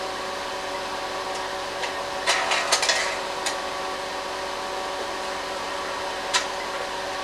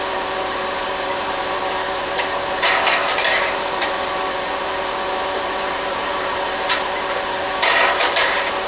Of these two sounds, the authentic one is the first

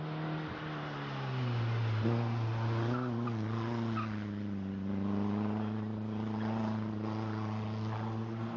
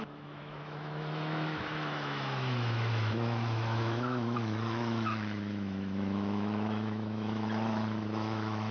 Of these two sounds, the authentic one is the first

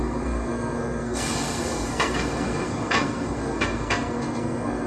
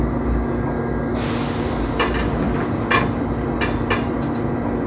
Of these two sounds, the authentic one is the second